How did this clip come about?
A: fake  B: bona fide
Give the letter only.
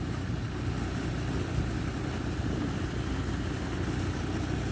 B